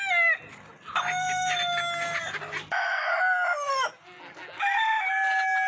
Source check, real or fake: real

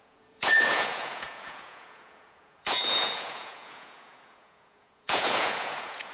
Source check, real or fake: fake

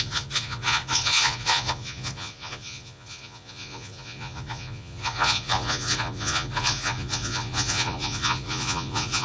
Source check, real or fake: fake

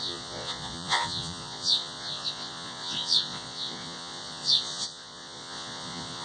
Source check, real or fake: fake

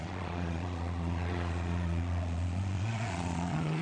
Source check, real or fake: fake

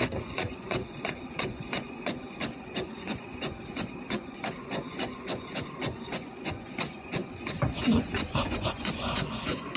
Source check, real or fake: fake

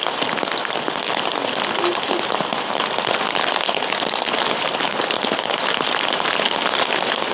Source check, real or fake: real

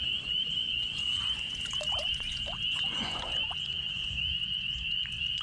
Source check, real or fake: fake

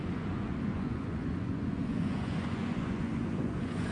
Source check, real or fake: fake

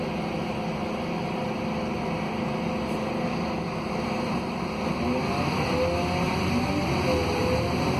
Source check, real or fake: real